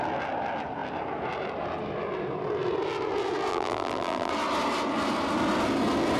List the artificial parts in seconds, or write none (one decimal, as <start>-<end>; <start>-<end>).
3.5-4.3